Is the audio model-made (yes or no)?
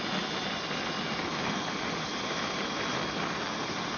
no